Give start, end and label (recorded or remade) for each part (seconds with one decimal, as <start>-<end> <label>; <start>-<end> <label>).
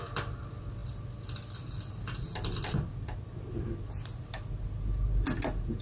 0.0-5.8 recorded